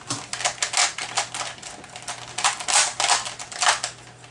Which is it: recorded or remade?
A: recorded